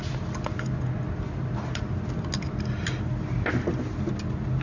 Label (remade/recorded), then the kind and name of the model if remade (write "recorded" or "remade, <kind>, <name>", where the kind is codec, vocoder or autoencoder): recorded